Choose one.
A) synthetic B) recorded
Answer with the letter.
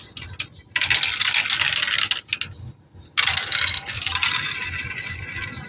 B